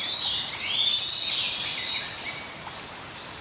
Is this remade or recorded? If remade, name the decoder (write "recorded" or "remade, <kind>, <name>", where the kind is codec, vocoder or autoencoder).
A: recorded